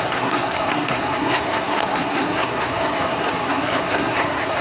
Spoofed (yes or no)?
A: yes